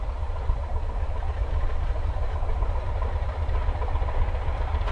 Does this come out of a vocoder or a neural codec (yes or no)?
yes